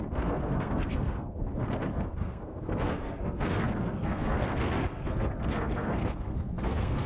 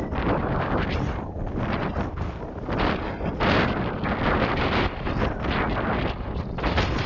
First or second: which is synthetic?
first